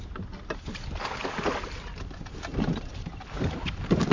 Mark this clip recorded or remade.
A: recorded